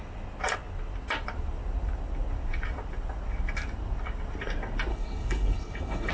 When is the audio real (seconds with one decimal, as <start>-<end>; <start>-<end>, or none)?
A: 0.0-4.9